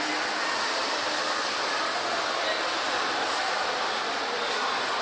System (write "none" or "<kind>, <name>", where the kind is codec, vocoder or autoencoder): none